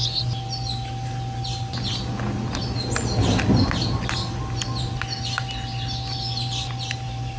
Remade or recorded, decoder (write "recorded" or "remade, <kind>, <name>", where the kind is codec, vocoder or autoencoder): recorded